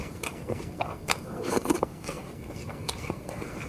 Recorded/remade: remade